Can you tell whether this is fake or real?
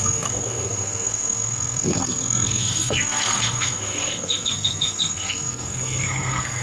fake